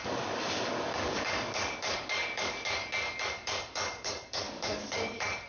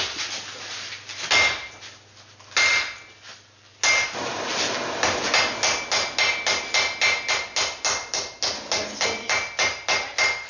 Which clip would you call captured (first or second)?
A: second